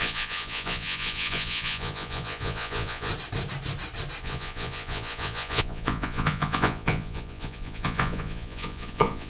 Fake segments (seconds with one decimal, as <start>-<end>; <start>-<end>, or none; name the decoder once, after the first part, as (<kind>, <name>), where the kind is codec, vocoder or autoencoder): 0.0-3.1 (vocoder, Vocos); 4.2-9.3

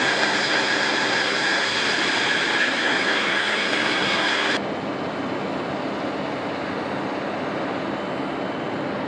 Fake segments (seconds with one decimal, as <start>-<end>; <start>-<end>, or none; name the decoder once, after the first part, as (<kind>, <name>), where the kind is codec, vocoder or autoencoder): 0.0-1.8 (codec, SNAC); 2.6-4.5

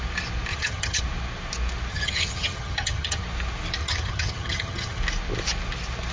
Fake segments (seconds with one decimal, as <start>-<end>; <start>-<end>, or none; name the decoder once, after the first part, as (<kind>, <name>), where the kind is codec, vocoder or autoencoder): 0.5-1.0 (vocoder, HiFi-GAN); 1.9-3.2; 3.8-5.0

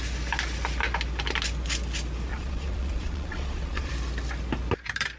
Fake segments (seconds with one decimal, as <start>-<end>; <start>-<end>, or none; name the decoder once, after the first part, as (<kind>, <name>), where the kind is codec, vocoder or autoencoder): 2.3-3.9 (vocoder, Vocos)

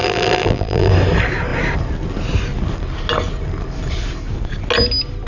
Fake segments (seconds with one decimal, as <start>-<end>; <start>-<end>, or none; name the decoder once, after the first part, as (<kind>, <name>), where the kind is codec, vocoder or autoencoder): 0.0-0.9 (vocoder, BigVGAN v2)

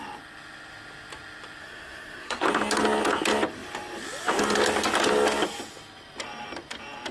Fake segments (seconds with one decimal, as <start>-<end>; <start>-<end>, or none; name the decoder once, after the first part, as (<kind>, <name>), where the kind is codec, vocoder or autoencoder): 1.6-2.4 (codec, SNAC)